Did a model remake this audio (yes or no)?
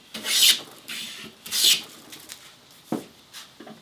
no